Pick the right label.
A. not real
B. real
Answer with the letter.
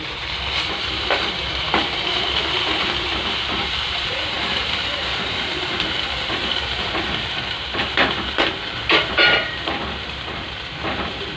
A